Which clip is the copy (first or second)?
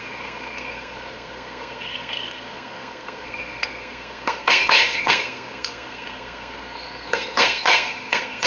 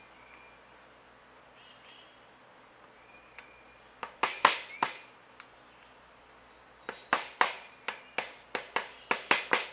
first